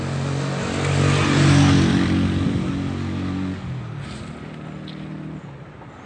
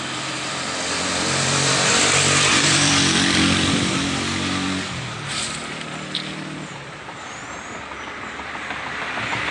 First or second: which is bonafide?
first